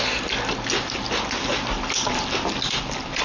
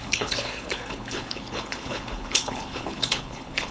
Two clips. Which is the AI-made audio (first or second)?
second